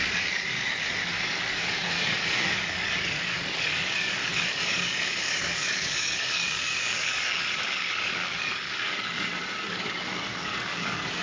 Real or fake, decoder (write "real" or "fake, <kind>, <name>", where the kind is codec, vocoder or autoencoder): fake, codec, DAC